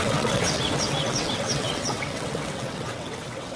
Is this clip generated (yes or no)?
yes